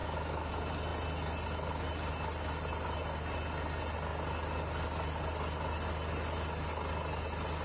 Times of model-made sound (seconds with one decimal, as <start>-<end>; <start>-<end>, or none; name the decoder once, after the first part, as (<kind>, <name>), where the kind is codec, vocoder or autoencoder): 0.0-0.5 (autoencoder, DAC-VAE)

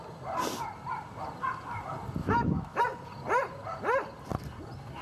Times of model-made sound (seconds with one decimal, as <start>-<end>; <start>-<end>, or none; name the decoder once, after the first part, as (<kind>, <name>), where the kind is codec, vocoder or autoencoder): 2.2-2.8 (autoencoder, DAC-VAE)

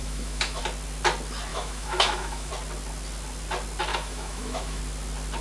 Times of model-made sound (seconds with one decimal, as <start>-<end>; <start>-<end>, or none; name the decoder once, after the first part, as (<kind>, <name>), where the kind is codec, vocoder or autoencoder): 0.0-0.6 (autoencoder, DAC-VAE); 1.5-2.5; 3.9-4.8

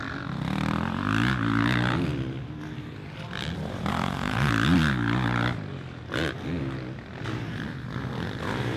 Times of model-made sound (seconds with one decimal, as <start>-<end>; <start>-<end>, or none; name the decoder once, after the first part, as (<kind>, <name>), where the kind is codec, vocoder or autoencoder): 3.9-4.5 (autoencoder, DAC-VAE)

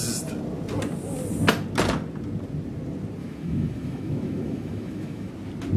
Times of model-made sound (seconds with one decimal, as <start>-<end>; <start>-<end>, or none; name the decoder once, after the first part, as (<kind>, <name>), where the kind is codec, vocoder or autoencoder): 3.2-5.3 (autoencoder, DAC-VAE)